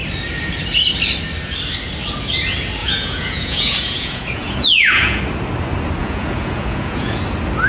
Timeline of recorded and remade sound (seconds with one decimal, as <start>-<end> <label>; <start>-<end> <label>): 0.0-2.8 recorded; 2.8-5.2 remade; 5.2-6.0 recorded; 6.0-7.2 remade; 7.2-7.7 recorded